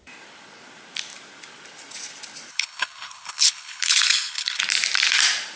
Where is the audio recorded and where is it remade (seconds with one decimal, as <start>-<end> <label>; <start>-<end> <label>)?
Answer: 0.0-2.5 recorded; 2.5-4.6 remade; 4.6-5.6 recorded